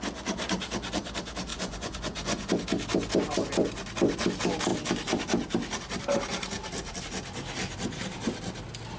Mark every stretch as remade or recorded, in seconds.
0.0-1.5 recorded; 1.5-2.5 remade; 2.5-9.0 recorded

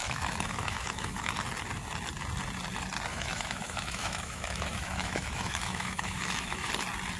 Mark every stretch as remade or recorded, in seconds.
0.0-1.3 remade; 1.3-3.1 recorded; 3.1-6.7 remade; 6.7-7.2 recorded

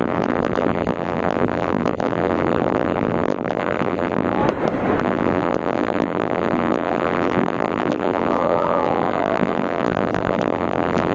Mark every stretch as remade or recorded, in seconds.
0.0-4.4 remade; 4.4-5.0 recorded; 5.0-11.1 remade

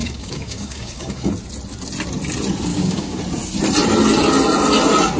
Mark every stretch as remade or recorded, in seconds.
0.0-1.3 remade; 1.3-2.7 recorded; 2.7-3.2 remade; 3.2-5.2 recorded

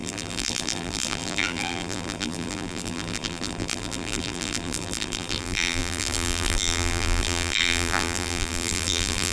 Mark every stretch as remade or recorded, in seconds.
0.0-9.3 remade

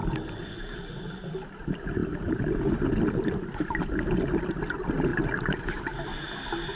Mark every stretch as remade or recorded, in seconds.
0.0-6.8 recorded

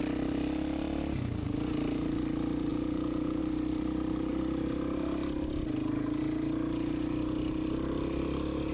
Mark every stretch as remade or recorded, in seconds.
0.0-2.7 recorded; 2.7-3.4 remade; 3.4-8.7 recorded

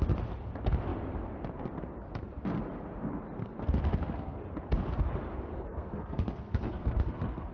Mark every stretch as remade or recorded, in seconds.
0.0-3.4 recorded; 3.4-4.4 remade; 4.4-5.5 recorded; 5.5-7.5 remade